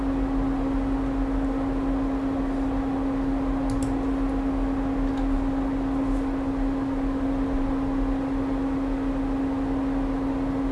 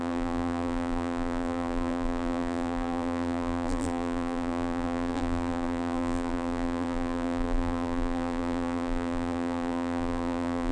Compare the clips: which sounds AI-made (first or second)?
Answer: second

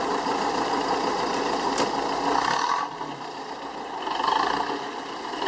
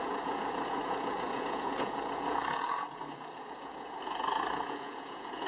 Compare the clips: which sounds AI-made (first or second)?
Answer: second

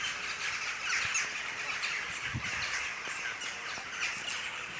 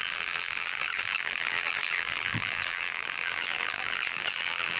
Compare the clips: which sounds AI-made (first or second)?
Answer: second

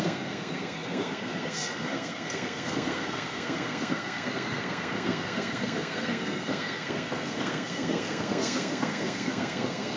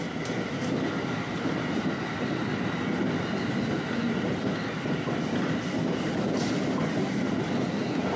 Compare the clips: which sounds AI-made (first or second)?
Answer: first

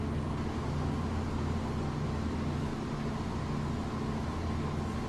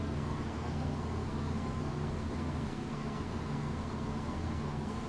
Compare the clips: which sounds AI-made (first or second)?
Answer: second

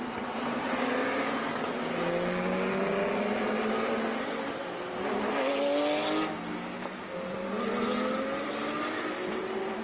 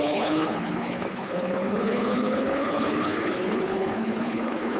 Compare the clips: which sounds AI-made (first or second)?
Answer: second